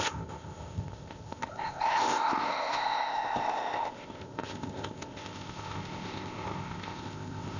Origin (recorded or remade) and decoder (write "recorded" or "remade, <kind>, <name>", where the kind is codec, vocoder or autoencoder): remade, codec, ZipCodec